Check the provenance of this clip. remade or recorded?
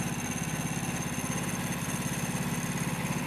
recorded